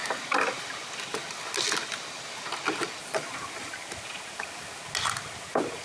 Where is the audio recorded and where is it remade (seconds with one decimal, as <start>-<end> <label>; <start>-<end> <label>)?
0.0-5.8 recorded